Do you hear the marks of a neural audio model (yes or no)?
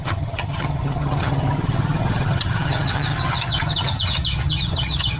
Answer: yes